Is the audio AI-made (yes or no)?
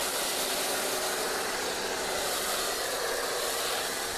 no